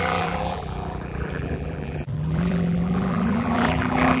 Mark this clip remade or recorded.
remade